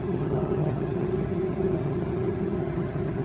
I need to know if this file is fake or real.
fake